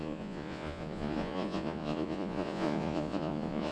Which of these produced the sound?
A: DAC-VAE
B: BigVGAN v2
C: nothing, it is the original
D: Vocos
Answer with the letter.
D